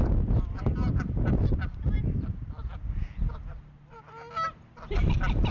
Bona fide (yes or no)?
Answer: yes